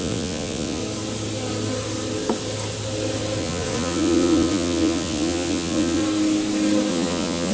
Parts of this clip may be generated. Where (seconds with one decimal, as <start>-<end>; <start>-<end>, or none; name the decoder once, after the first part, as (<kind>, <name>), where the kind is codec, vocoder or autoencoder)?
0.0-0.8 (vocoder, Vocos); 3.4-6.0; 6.9-7.5